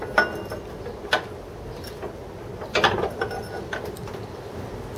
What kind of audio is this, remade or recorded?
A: recorded